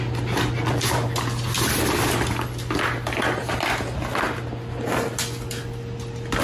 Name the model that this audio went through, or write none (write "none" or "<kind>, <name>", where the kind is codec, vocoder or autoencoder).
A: none